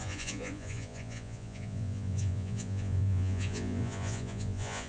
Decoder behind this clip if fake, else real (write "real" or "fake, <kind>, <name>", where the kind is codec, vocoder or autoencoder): fake, vocoder, Vocos